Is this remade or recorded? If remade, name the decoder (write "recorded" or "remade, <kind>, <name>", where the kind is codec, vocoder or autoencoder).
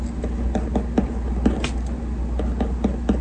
recorded